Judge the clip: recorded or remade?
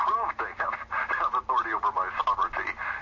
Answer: recorded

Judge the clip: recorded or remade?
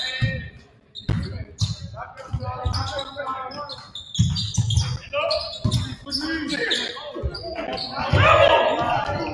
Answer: recorded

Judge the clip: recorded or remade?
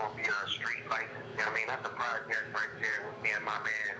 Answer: remade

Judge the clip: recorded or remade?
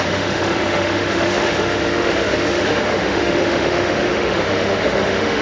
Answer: remade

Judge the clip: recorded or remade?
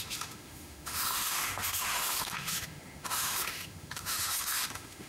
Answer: remade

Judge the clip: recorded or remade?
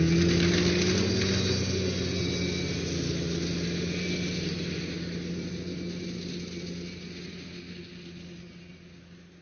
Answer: recorded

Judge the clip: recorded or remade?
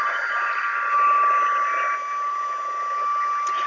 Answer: recorded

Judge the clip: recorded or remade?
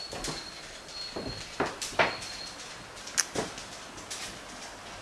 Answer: recorded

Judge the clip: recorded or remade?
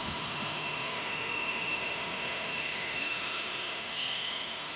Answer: remade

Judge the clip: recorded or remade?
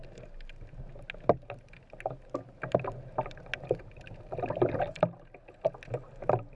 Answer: recorded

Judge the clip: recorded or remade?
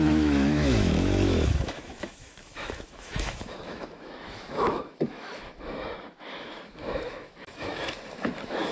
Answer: remade